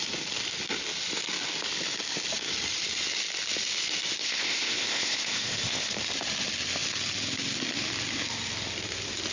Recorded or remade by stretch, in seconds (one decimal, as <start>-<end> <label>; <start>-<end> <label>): 0.0-4.2 recorded; 4.2-5.9 remade; 5.9-9.3 recorded